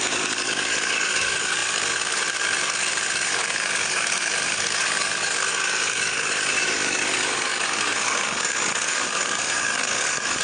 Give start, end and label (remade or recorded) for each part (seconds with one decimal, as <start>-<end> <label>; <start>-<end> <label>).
0.0-10.4 remade